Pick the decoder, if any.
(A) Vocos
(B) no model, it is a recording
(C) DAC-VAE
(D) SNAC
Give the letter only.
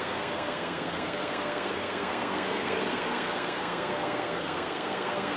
D